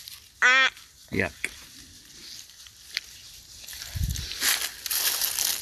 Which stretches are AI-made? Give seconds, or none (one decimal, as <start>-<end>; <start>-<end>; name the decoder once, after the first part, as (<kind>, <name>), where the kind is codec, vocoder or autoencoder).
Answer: 1.0-1.7 (vocoder, BigVGAN v2)